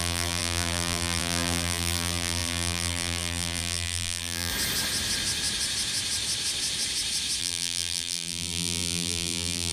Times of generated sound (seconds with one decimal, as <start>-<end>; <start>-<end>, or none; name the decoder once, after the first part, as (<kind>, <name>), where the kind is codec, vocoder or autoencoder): 0.0-4.5 (vocoder, BigVGAN v2); 7.4-9.7